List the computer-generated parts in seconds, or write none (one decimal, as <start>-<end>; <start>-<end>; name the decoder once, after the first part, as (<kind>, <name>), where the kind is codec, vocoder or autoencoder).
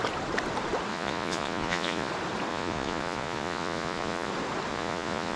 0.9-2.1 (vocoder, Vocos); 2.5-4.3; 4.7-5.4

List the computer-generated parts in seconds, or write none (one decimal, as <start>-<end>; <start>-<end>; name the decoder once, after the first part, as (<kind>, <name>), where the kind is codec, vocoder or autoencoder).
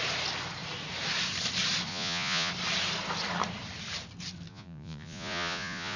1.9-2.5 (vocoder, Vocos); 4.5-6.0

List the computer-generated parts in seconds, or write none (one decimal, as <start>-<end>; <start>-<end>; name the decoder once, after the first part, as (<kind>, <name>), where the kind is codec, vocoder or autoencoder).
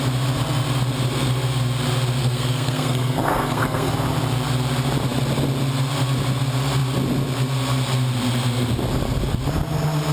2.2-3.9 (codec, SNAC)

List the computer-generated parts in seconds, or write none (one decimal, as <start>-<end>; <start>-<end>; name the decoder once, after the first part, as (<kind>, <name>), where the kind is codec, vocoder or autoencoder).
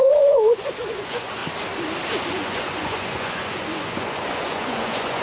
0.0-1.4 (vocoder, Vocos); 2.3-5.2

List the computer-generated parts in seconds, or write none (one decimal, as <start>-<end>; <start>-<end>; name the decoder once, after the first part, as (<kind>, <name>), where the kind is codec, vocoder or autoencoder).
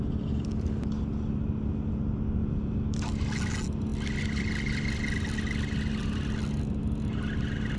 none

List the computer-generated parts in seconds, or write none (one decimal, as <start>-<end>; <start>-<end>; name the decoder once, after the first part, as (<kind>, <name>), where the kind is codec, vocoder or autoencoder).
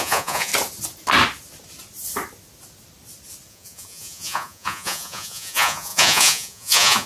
0.0-0.5 (vocoder, Vocos); 3.5-7.1